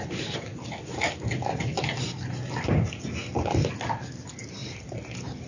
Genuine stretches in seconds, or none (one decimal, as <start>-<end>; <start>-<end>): 0.0-5.5